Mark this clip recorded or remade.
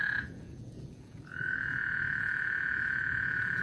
remade